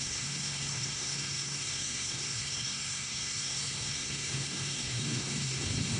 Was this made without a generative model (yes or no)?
no